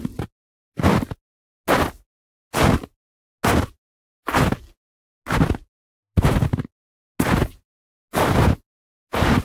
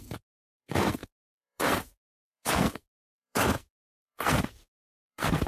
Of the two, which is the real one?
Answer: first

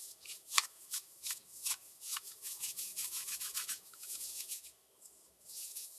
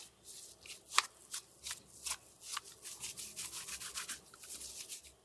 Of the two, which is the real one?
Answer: second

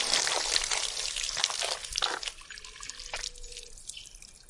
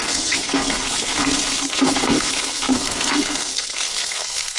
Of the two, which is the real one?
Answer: first